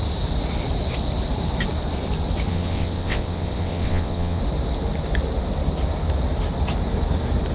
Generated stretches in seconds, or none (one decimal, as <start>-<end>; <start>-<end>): 2.5-4.4